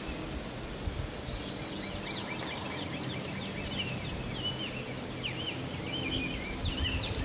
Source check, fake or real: real